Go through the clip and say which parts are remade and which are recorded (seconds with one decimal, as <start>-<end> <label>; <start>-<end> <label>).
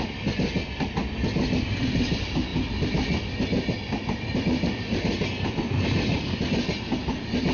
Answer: 0.0-7.5 recorded